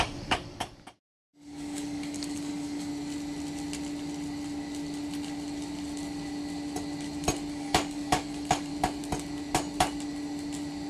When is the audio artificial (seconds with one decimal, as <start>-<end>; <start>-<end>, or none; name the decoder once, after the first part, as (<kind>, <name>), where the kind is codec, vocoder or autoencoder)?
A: 0.0-2.9 (codec, DAC); 7.5-8.7

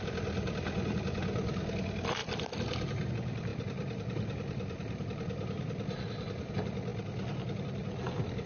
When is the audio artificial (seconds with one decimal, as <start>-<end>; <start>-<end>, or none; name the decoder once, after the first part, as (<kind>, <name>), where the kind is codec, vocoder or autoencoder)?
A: none

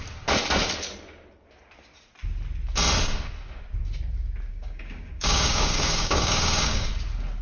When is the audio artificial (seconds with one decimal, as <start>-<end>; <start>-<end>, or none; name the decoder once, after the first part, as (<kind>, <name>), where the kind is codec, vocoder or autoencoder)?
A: 4.5-6.9 (codec, DAC)

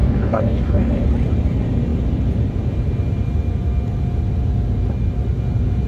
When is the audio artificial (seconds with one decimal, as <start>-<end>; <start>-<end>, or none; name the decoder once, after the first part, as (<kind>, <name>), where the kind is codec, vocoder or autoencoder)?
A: 0.0-0.9 (codec, DAC)

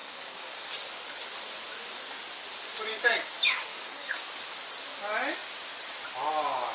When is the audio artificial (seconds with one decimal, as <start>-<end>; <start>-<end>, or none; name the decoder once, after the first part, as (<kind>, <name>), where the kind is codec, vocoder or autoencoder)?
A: 0.0-0.6 (codec, DAC); 3.7-4.3

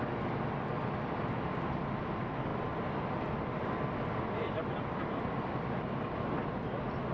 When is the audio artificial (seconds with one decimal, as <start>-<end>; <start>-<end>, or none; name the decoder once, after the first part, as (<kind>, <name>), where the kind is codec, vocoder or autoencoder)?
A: none

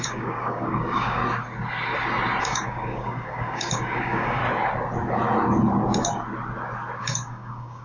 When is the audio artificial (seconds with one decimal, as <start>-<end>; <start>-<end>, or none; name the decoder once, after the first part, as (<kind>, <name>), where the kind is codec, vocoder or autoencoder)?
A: 0.0-1.2 (codec, DAC); 2.4-4.4; 7.0-7.8

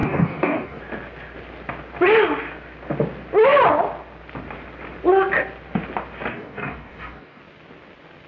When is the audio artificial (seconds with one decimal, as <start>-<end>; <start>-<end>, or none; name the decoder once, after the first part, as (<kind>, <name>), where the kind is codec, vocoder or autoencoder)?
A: 0.0-0.8 (codec, DAC); 6.3-7.4